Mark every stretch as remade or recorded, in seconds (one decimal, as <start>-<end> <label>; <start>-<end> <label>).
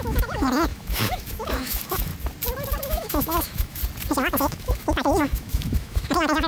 0.0-2.1 remade; 2.1-2.8 recorded; 2.8-3.8 remade; 3.8-4.4 recorded; 4.4-6.5 remade